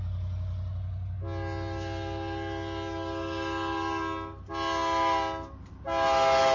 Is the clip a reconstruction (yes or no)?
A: no